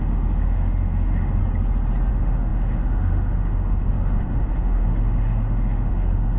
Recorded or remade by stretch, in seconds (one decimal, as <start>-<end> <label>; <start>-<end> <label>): 0.0-1.4 remade; 1.4-2.1 recorded; 2.1-6.4 remade